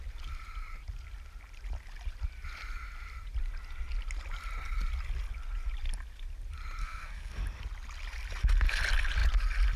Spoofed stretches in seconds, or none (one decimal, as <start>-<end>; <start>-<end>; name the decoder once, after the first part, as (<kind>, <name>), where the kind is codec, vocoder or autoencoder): 6.8-7.4 (codec, SNAC)